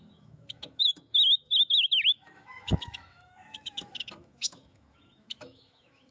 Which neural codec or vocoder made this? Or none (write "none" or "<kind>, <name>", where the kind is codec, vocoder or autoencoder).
autoencoder, DAC-VAE